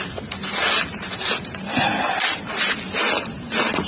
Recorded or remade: recorded